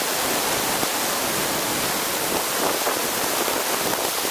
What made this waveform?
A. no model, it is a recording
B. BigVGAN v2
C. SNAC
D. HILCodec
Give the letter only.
A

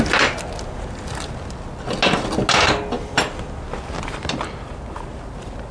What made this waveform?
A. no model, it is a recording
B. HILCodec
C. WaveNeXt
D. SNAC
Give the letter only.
A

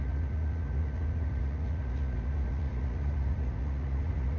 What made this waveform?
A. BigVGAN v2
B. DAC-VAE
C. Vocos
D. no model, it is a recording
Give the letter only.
C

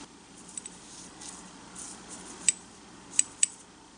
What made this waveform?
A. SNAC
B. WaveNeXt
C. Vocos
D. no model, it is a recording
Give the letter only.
D